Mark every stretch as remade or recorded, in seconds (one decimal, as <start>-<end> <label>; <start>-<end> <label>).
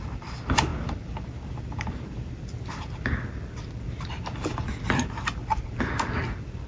0.0-6.7 recorded